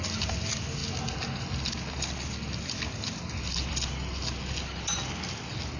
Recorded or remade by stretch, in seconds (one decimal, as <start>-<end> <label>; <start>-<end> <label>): 0.0-5.8 recorded